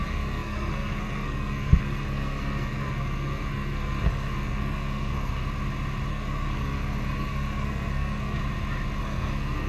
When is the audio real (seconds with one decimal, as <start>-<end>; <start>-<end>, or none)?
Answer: 5.4-6.1; 8.4-9.0